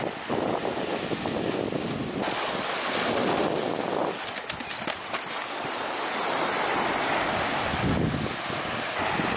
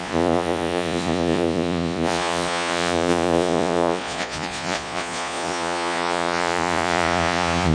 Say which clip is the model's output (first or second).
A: second